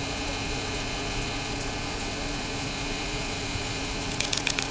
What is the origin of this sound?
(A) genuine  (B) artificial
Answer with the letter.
B